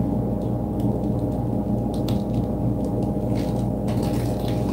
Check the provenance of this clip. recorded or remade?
recorded